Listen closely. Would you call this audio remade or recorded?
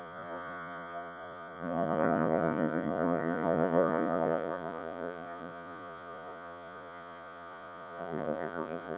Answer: remade